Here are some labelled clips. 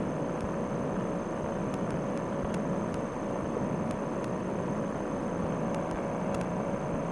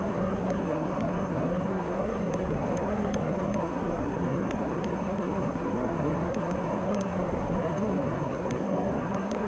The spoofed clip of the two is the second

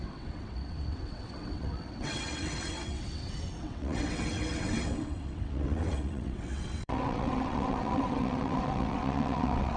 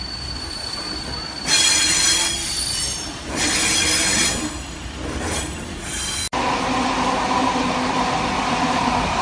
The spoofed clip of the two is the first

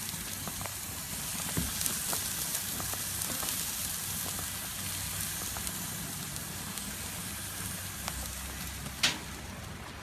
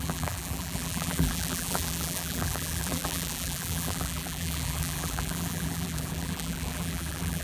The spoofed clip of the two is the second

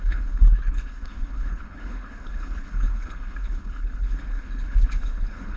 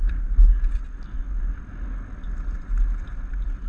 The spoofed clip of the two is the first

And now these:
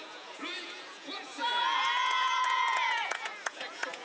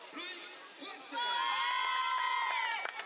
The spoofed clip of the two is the first